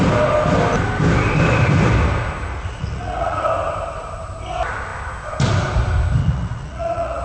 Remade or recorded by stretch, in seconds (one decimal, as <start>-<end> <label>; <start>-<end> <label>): 0.0-2.5 recorded; 2.5-3.5 remade; 3.5-6.2 recorded; 6.2-7.2 remade